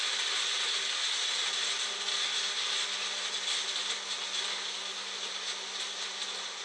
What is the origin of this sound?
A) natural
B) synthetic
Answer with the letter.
A